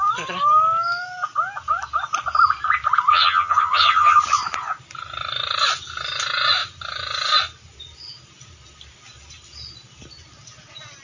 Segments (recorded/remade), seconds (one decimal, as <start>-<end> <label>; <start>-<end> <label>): 0.0-3.1 recorded; 3.1-4.2 remade; 4.2-11.0 recorded